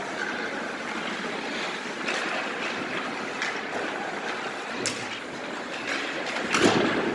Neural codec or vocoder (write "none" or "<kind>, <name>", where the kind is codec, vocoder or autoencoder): none